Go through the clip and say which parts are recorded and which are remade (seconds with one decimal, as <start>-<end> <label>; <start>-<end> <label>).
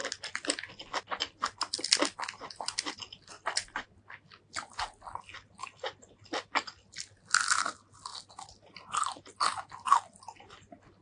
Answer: 0.0-11.0 recorded